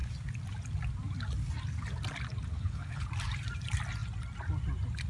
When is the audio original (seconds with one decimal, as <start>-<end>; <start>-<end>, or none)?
0.0-2.5; 3.1-5.1